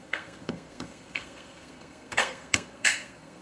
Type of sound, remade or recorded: remade